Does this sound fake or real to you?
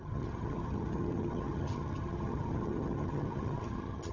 fake